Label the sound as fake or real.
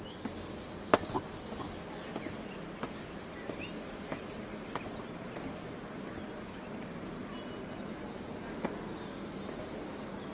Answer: real